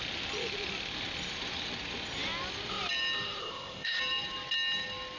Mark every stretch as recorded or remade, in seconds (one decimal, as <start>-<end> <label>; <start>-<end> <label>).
0.0-3.4 recorded; 3.4-4.0 remade; 4.0-5.2 recorded